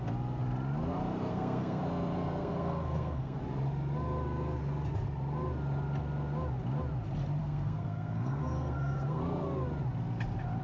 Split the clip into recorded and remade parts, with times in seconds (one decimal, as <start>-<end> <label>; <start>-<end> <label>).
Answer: 0.0-1.3 recorded; 1.3-1.8 remade; 1.8-2.4 recorded; 2.4-3.4 remade; 3.4-7.4 recorded; 7.4-9.2 remade; 9.2-10.6 recorded